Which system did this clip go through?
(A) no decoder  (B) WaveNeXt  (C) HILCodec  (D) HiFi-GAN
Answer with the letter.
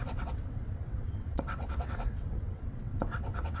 B